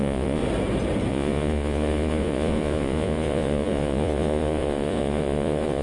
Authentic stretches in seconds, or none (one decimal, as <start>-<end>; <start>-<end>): 0.4-1.1